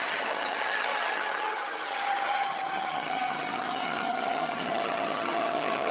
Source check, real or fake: fake